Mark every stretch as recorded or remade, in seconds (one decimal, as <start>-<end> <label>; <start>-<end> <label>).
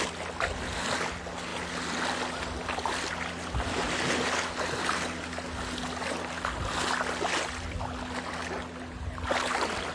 0.0-9.9 recorded